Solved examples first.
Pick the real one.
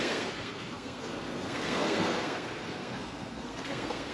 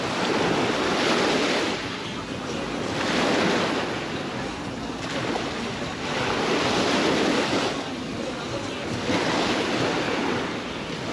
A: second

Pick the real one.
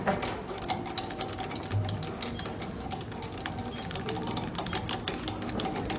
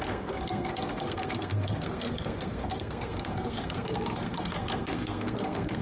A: first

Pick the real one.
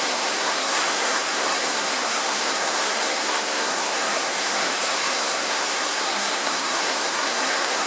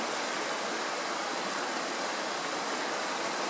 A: second